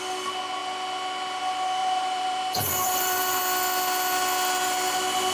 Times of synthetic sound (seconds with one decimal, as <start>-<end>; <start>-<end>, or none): 1.8-3.4